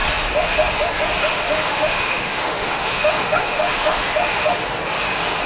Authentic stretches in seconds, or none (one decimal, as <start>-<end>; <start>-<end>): 0.0-1.3; 4.6-5.5